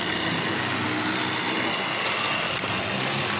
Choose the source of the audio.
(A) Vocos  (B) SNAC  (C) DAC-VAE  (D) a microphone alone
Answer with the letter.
D